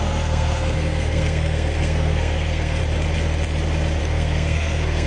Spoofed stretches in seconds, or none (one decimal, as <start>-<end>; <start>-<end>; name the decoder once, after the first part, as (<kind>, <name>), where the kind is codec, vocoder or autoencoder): 0.0-2.8 (codec, SNAC); 4.0-5.1